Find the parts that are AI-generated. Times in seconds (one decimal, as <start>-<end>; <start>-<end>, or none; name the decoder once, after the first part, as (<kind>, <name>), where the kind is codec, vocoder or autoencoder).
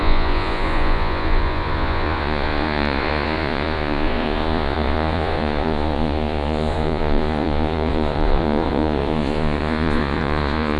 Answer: 0.0-10.8 (vocoder, Vocos)